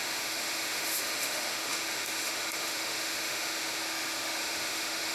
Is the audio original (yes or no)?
no